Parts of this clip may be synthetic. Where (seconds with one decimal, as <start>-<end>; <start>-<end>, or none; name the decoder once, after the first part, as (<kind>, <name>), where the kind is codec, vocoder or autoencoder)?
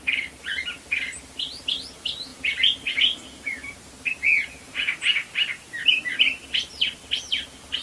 4.2-5.3 (vocoder, Vocos)